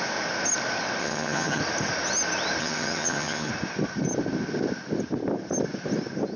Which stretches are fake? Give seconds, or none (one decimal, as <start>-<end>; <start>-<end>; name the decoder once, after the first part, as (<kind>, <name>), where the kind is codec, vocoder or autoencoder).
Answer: 1.0-1.6 (vocoder, HiFi-GAN); 2.6-3.5